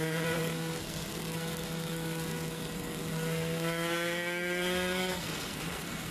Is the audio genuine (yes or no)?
no